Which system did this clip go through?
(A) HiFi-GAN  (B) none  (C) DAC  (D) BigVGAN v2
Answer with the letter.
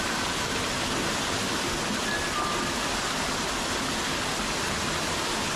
B